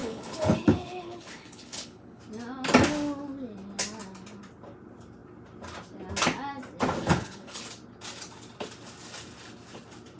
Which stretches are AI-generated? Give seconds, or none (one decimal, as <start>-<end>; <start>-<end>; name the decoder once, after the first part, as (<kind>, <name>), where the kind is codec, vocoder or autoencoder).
0.0-2.2 (codec, HILCodec); 7.0-7.6